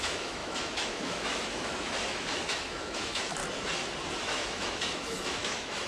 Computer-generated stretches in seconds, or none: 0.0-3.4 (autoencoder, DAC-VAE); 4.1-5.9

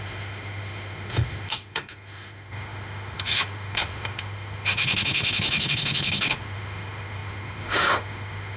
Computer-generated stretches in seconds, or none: 0.0-8.6 (autoencoder, DAC-VAE)

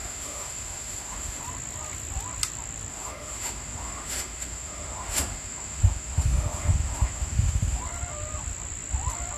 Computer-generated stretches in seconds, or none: 0.0-1.4 (autoencoder, DAC-VAE); 2.9-7.8

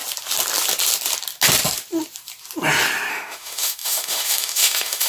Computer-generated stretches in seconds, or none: 3.1-5.1 (autoencoder, DAC-VAE)

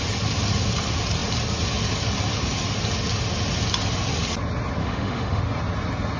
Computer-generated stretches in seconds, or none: 4.8-5.4 (autoencoder, DAC-VAE)